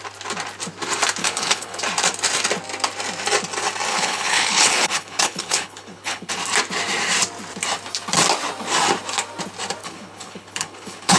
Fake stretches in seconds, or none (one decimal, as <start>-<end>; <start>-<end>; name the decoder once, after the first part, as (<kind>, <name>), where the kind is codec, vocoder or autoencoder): 1.2-1.8 (codec, HILCodec); 3.9-6.3; 9.8-11.2